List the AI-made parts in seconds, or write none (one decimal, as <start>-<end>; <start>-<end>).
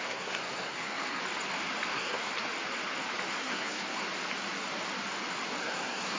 0.0-1.2; 1.9-2.3; 3.3-4.0; 5.6-6.2